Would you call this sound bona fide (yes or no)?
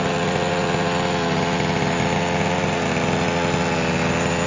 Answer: yes